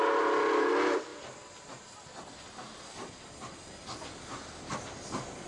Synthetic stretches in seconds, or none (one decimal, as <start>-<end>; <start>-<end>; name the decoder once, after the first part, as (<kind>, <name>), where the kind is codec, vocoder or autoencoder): none